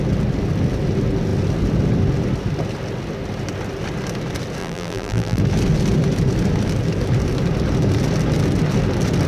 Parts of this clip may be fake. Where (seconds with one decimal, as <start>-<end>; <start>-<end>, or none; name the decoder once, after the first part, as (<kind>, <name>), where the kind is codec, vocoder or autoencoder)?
4.6-5.4 (vocoder, BigVGAN v2)